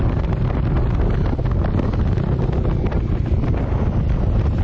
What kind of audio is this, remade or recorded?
recorded